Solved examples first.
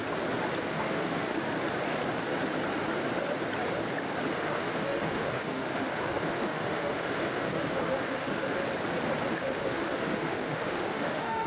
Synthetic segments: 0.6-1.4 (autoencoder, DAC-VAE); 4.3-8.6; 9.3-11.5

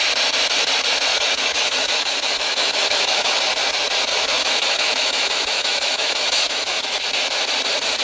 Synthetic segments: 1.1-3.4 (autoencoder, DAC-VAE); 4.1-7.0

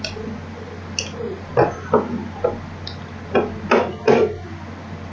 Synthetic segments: none

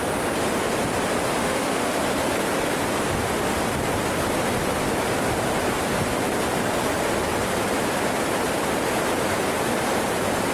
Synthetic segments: 1.4-2.0 (autoencoder, DAC-VAE)